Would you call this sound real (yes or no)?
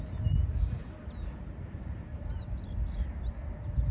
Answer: yes